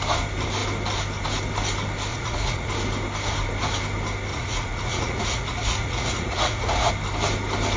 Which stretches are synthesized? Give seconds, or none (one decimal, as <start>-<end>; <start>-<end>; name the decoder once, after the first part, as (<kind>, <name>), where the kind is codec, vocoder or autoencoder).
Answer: 2.1-2.7 (vocoder, Vocos); 4.3-6.9